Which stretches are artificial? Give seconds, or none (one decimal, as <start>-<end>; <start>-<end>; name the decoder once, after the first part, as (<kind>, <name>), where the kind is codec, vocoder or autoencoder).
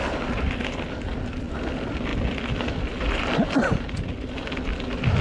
none